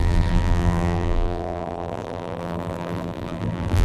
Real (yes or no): no